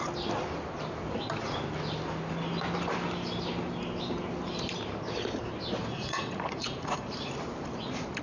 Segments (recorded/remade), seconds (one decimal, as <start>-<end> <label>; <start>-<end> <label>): 0.0-5.8 recorded; 5.8-7.3 remade; 7.3-8.2 recorded